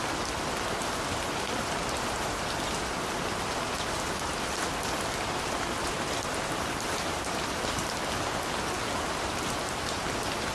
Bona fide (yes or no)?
yes